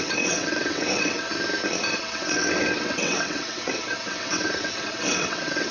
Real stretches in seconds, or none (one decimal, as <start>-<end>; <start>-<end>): 1.3-1.9